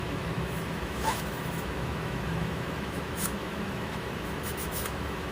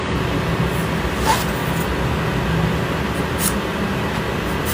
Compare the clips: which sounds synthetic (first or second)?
first